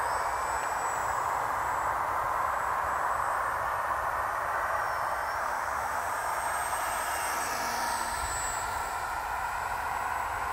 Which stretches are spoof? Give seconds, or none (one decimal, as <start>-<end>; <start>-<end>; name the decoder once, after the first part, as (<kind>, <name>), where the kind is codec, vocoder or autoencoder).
5.4-6.1 (autoencoder, DAC-VAE)